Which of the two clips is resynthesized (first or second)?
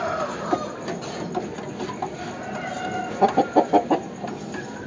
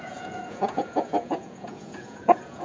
second